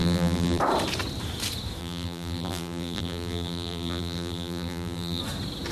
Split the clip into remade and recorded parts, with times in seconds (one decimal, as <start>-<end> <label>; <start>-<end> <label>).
0.0-0.6 remade; 0.6-1.8 recorded; 1.8-5.2 remade; 5.2-5.7 recorded